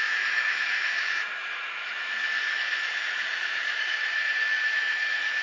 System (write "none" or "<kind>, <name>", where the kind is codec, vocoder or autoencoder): autoencoder, DAC-VAE